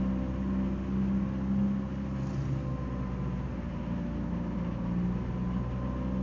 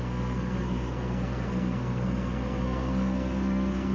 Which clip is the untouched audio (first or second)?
first